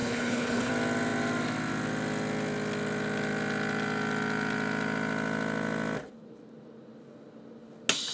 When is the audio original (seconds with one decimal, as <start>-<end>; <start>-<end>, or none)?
0.7-8.1